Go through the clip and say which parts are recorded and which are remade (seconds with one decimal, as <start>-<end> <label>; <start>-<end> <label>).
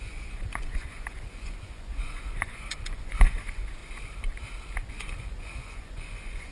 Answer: 0.0-3.8 remade; 3.8-4.9 recorded; 4.9-6.5 remade